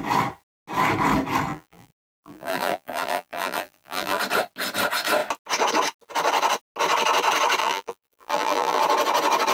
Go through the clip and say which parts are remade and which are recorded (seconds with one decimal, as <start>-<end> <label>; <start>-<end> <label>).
0.0-1.5 recorded; 1.5-4.2 remade; 4.2-7.6 recorded; 7.6-8.8 remade; 8.8-9.5 recorded